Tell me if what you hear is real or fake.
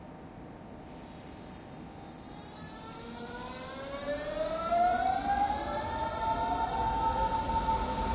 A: real